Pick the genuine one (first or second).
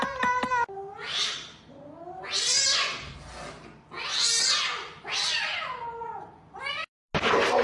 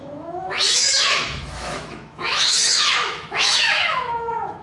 first